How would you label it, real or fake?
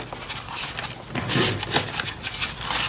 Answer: real